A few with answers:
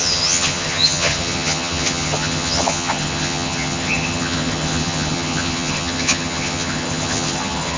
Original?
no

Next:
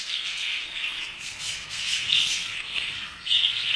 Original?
no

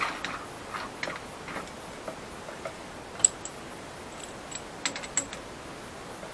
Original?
yes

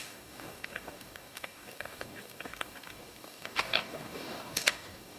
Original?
no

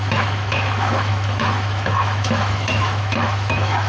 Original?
no